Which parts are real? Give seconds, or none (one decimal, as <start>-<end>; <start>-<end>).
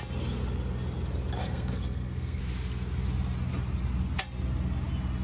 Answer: 0.0-1.4; 2.4-5.2